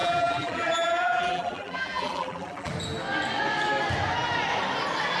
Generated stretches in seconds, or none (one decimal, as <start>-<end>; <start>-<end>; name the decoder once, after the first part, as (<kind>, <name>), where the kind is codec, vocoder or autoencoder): 0.0-2.7 (vocoder, BigVGAN v2)